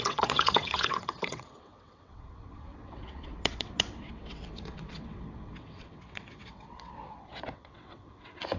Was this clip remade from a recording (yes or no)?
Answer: yes